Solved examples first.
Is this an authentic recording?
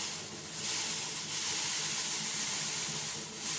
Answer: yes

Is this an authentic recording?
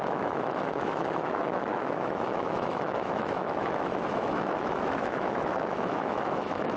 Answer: no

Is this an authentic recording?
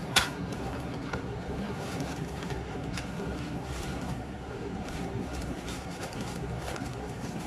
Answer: no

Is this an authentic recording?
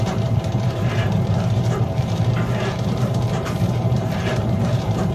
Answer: no